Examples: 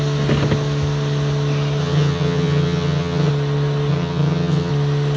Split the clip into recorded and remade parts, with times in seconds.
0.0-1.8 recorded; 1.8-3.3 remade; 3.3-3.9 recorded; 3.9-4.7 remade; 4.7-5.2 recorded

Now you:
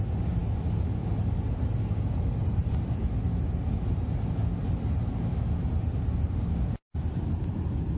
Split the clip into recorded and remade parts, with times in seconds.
0.0-8.0 recorded

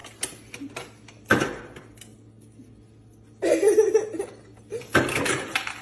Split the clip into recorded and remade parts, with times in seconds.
0.0-5.8 recorded

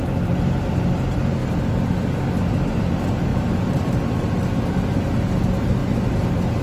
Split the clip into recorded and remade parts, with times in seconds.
0.0-3.3 recorded; 3.3-4.0 remade; 4.0-5.8 recorded; 5.8-6.6 remade

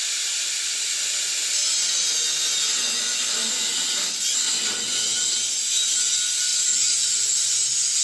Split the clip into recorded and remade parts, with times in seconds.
0.0-8.0 recorded

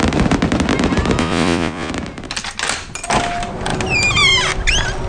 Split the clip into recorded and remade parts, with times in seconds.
0.0-1.2 recorded; 1.2-1.9 remade; 1.9-5.1 recorded